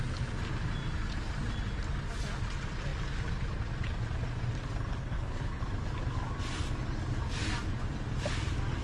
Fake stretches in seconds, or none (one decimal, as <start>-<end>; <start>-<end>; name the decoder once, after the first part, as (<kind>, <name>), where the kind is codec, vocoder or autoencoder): 5.0-5.6 (codec, HILCodec)